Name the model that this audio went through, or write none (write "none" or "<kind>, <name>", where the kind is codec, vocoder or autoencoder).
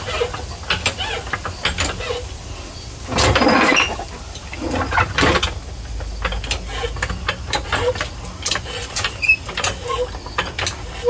none